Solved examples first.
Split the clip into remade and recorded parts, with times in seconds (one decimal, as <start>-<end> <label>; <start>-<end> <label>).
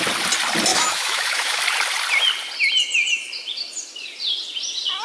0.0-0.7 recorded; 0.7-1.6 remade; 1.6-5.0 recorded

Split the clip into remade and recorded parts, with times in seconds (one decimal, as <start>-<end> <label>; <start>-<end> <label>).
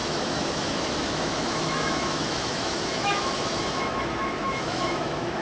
0.0-5.4 remade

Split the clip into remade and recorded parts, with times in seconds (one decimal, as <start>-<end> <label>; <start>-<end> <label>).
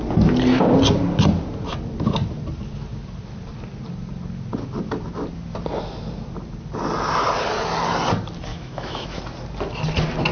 0.0-8.5 recorded; 8.5-9.2 remade; 9.2-10.3 recorded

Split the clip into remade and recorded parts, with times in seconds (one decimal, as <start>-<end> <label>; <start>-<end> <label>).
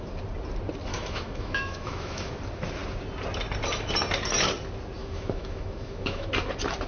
0.0-0.9 recorded; 0.9-2.3 remade; 2.3-5.0 recorded; 5.0-6.3 remade; 6.3-6.9 recorded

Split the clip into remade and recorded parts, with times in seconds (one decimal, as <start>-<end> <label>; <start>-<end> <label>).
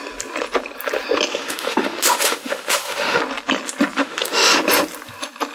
0.0-1.3 recorded; 1.3-3.2 remade; 3.2-4.0 recorded; 4.0-4.6 remade; 4.6-5.5 recorded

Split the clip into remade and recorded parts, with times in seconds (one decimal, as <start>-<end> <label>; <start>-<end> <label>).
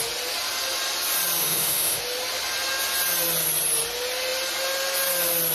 0.0-1.4 recorded; 1.4-2.0 remade; 2.0-5.5 recorded